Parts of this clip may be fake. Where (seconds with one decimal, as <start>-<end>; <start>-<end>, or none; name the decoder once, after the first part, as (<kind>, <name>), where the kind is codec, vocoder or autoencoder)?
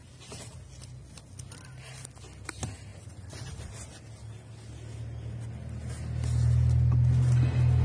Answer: 2.9-3.7 (vocoder, BigVGAN v2)